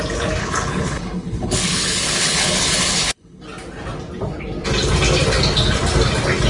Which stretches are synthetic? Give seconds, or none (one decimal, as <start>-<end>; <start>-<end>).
0.4-3.4